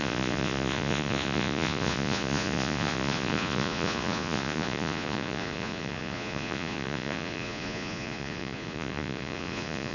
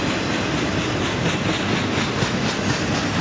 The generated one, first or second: first